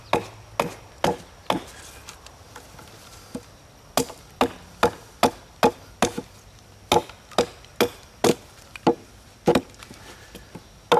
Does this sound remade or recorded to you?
recorded